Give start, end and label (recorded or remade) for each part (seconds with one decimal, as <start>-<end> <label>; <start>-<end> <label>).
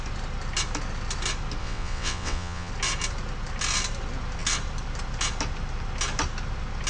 0.0-1.6 recorded; 1.6-2.7 remade; 2.7-6.9 recorded